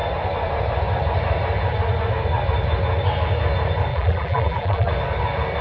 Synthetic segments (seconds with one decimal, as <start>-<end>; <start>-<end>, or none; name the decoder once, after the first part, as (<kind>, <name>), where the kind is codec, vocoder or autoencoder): 3.9-4.9 (vocoder, BigVGAN v2)